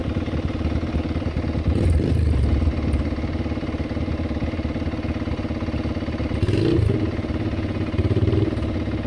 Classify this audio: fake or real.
real